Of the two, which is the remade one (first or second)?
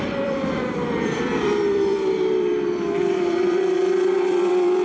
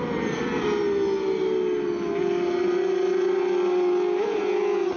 first